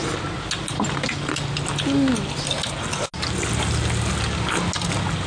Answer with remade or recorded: recorded